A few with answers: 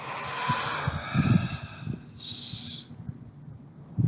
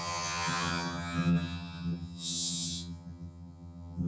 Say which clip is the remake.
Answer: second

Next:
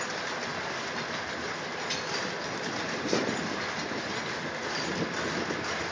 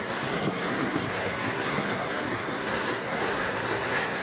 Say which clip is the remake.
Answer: second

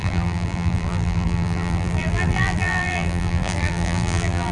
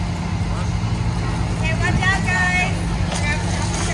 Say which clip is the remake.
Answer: first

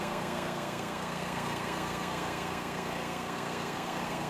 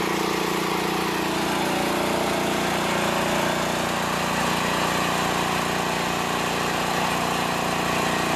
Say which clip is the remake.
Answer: first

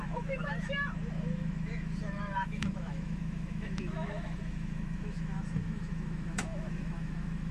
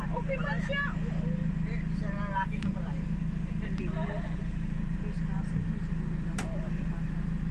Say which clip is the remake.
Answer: first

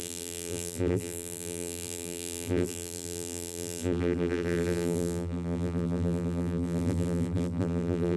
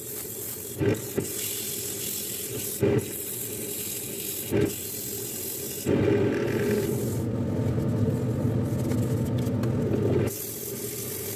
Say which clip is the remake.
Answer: first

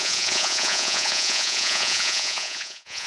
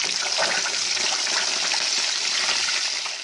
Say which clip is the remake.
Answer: first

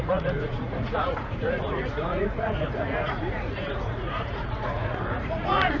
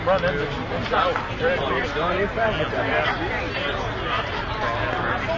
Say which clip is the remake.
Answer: first